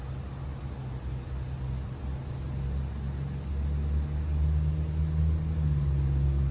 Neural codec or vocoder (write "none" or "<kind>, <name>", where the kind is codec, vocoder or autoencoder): none